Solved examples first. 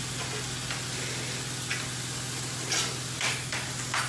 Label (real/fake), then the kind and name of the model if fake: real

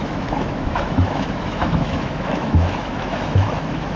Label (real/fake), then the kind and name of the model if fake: fake, autoencoder, DAC-VAE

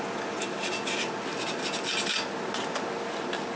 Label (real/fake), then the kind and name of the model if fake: real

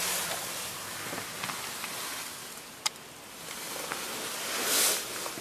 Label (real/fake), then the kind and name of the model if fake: real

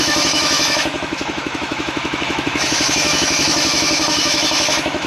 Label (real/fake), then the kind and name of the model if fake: fake, autoencoder, DAC-VAE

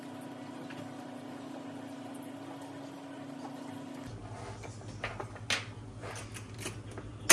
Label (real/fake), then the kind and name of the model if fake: real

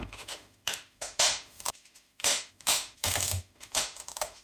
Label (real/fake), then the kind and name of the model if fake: fake, autoencoder, DAC-VAE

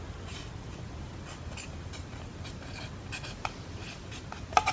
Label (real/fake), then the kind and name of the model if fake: real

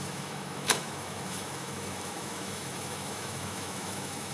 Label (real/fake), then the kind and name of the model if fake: fake, autoencoder, DAC-VAE